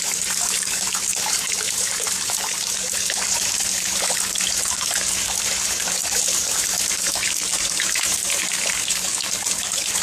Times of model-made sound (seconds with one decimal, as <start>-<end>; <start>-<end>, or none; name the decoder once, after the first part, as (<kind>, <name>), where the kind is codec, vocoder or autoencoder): 0.0-10.0 (codec, DAC)